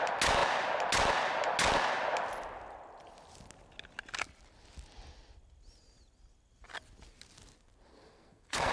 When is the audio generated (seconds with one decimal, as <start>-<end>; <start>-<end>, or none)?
7.9-8.7